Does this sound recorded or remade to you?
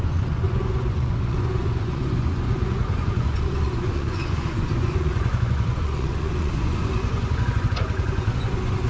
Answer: remade